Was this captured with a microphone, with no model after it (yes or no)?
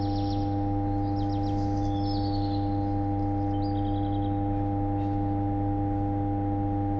yes